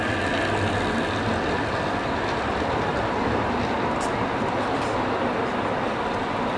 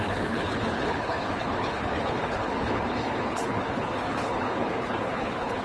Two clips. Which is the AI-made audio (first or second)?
second